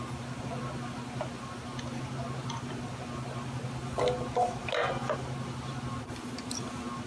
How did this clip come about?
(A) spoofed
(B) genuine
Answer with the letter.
B